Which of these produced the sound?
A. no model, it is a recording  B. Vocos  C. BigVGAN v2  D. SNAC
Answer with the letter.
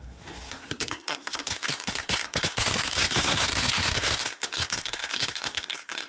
D